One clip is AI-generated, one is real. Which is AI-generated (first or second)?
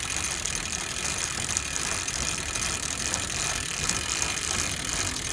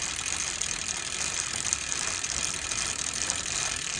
second